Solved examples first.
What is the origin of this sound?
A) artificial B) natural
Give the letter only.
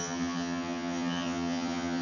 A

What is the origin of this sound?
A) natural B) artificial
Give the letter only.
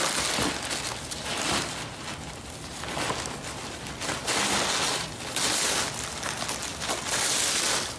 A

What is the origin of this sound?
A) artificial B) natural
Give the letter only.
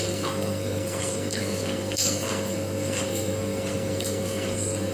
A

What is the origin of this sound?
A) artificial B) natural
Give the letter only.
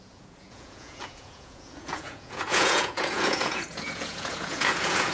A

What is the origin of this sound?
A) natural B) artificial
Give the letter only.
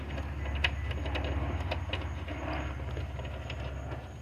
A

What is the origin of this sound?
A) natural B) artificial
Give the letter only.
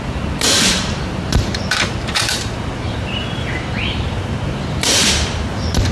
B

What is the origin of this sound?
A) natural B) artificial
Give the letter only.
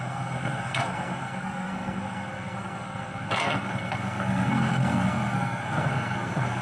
B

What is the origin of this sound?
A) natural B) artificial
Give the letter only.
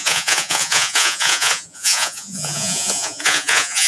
B